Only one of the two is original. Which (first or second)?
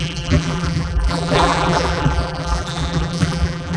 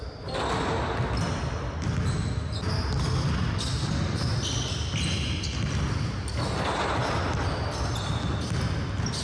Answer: second